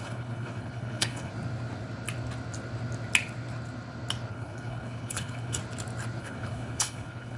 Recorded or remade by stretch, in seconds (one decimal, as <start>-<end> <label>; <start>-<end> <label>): 0.0-1.3 remade; 1.3-4.3 recorded; 4.3-5.6 remade; 5.6-6.2 recorded; 6.2-7.4 remade